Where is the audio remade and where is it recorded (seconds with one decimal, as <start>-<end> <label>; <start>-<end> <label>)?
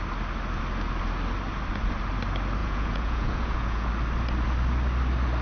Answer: 0.0-2.6 recorded; 2.6-3.9 remade; 3.9-5.4 recorded